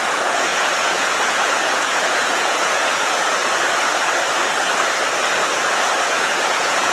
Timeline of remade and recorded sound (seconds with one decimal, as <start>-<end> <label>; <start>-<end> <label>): 0.0-3.4 remade; 3.4-6.0 recorded; 6.0-6.9 remade